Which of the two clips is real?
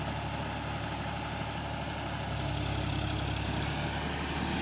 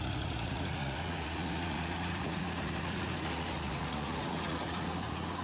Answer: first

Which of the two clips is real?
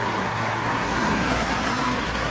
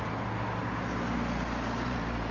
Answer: second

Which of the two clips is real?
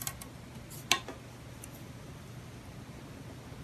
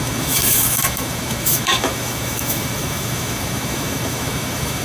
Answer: first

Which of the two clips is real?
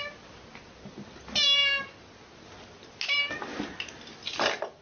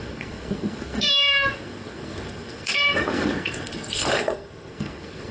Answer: first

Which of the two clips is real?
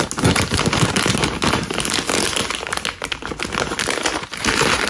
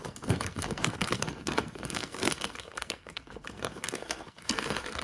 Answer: first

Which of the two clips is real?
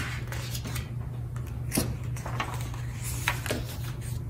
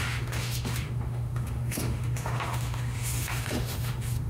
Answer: first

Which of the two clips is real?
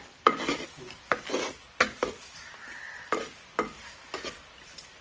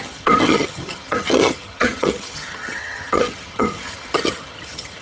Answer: first